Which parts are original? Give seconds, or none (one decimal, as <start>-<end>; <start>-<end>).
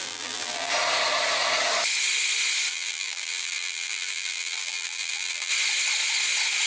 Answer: 0.7-2.7; 5.5-6.7